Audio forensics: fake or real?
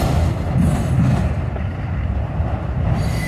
real